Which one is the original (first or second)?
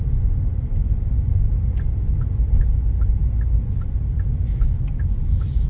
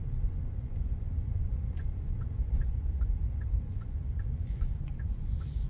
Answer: first